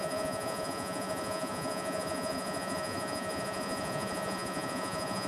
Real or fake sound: fake